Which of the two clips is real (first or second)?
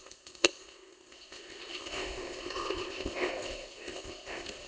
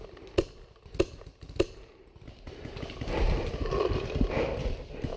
second